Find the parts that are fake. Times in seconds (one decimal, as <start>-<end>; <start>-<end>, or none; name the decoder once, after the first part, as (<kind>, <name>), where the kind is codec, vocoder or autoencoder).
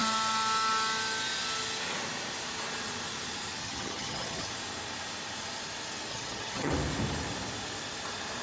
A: 3.6-4.5 (vocoder, HiFi-GAN); 6.1-6.7